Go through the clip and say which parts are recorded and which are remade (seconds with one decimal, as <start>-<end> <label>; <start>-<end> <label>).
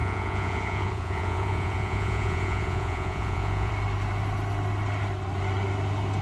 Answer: 0.0-3.7 remade; 3.7-6.2 recorded